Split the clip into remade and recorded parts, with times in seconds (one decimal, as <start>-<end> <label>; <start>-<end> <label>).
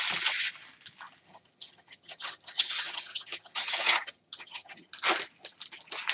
0.0-1.2 recorded; 1.2-4.9 remade; 4.9-6.1 recorded